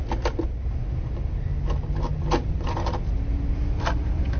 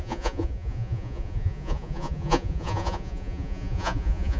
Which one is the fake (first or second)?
second